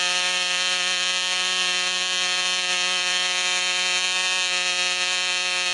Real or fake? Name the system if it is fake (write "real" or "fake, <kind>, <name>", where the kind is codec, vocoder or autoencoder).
fake, vocoder, BigVGAN v2